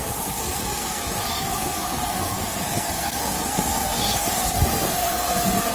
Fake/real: fake